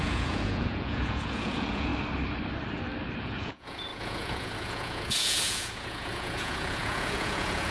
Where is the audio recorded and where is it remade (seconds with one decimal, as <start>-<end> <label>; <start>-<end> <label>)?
0.0-1.9 remade; 1.9-3.2 recorded; 3.2-7.7 remade